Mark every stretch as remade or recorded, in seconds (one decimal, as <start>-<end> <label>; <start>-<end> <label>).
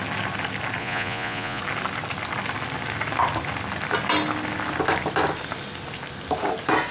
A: 0.0-0.8 recorded; 0.8-1.6 remade; 1.6-6.9 recorded